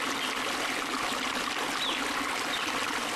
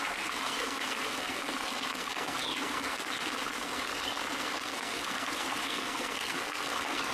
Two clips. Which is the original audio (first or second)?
first